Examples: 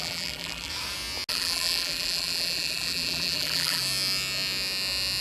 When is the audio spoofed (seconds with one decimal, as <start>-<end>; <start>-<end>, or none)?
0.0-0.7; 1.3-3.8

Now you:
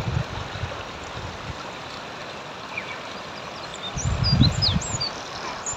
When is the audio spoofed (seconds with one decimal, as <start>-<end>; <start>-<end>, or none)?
none

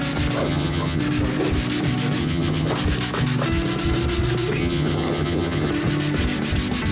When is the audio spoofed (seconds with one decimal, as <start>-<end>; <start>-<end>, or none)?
0.4-1.0; 2.2-2.7; 4.6-5.7